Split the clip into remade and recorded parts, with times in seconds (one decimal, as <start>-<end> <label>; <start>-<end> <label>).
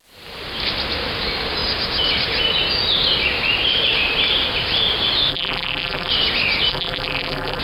0.0-5.3 recorded; 5.3-6.1 remade; 6.1-6.7 recorded; 6.7-7.6 remade